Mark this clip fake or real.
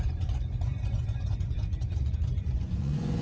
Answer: fake